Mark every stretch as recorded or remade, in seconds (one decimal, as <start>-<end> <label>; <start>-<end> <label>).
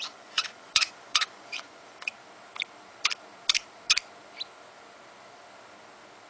0.0-2.1 remade; 2.1-6.3 recorded